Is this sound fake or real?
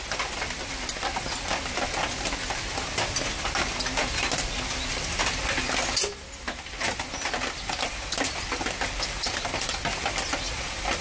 real